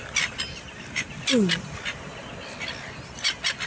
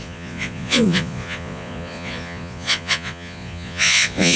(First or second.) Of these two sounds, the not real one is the second